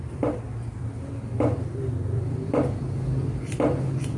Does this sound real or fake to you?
real